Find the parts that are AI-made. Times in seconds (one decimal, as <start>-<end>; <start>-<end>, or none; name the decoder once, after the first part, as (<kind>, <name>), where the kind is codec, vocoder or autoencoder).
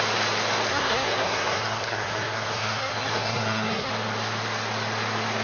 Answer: 0.7-3.9 (codec, SNAC)